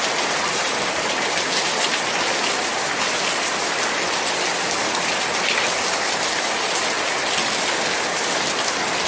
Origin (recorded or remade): recorded